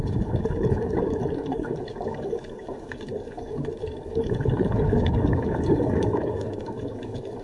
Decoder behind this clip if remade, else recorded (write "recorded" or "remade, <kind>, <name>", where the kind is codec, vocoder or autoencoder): remade, codec, DAC